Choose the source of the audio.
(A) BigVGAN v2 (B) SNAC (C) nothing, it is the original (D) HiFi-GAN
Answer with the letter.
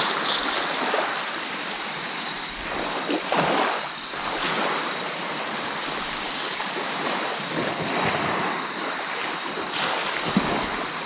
A